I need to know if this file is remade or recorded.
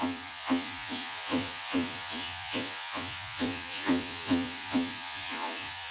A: remade